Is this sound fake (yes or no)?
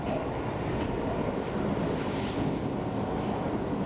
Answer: no